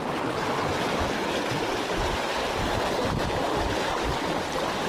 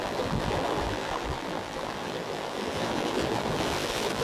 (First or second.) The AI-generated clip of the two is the second